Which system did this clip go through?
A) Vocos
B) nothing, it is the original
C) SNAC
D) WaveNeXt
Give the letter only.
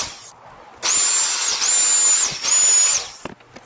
B